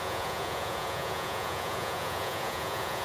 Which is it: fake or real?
fake